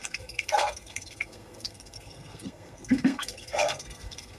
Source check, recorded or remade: remade